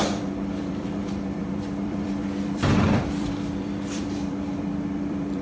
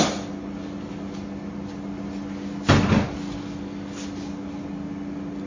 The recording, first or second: second